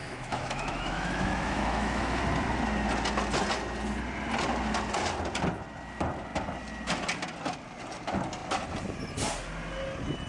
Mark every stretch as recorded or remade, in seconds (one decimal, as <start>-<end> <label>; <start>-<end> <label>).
0.0-2.2 remade; 2.2-10.3 recorded